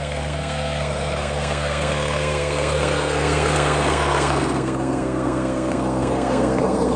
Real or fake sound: fake